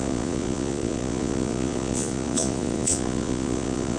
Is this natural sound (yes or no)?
no